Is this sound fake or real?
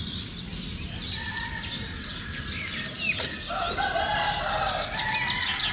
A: real